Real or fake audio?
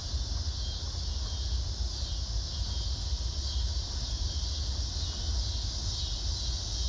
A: real